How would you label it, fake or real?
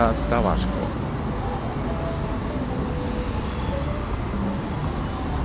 real